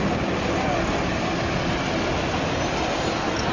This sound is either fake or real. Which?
real